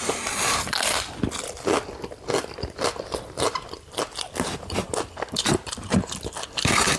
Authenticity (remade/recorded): recorded